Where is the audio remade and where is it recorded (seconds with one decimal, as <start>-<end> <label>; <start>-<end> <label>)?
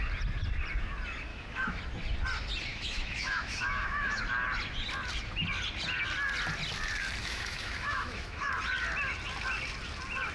0.0-1.3 recorded; 1.3-1.8 remade; 1.8-2.7 recorded; 2.7-4.2 remade; 4.2-7.2 recorded; 7.2-8.5 remade; 8.5-10.3 recorded